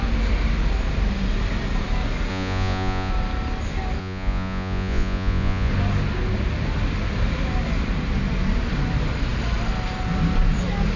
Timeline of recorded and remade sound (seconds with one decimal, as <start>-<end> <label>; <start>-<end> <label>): 0.0-2.3 recorded; 2.3-3.1 remade; 3.1-4.0 recorded; 4.0-5.7 remade; 5.7-11.0 recorded